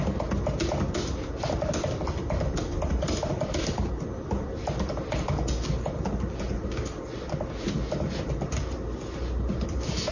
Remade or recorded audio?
recorded